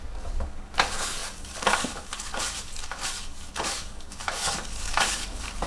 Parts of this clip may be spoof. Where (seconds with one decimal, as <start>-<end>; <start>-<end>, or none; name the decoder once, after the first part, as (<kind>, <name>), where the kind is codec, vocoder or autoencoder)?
0.0-5.7 (codec, DAC)